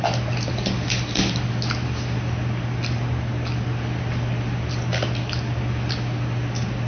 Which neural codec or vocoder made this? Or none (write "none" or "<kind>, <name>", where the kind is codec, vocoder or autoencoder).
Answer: none